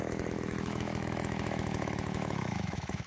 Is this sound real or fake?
fake